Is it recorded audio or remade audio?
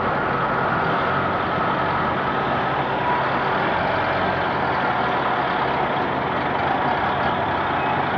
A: recorded